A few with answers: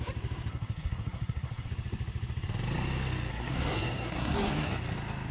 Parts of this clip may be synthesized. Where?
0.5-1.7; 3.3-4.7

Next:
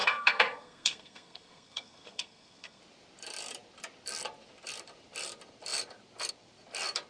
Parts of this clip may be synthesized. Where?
0.0-2.8

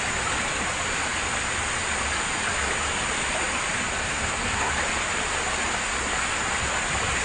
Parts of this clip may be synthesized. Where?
4.0-4.7

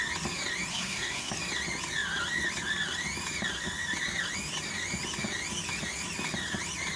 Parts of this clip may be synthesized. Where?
0.7-1.3